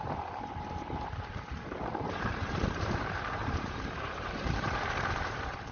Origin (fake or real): fake